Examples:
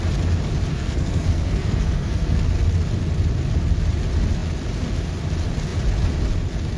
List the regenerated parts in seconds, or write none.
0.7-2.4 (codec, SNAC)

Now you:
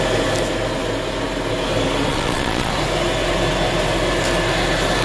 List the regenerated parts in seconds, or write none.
2.1-2.7 (vocoder, Vocos)

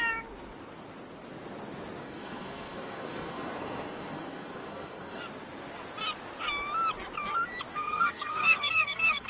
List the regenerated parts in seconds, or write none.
2.0-5.2 (codec, SNAC); 7.7-9.3

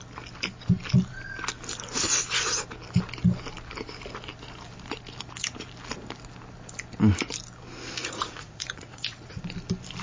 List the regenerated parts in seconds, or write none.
8.0-9.4 (vocoder, Vocos)

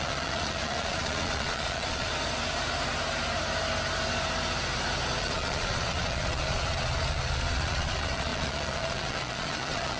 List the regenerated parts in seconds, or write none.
0.0-2.1 (vocoder, Vocos); 5.2-10.0

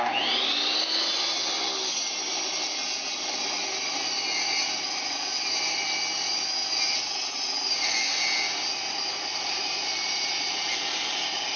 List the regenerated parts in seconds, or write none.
9.3-10.7 (vocoder, BigVGAN v2)